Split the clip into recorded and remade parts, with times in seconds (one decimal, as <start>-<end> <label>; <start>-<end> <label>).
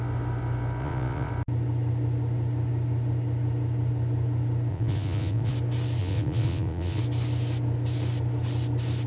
0.0-0.8 recorded; 0.8-1.3 remade; 1.3-4.7 recorded; 4.7-5.5 remade; 5.5-6.0 recorded; 6.0-7.0 remade; 7.0-9.1 recorded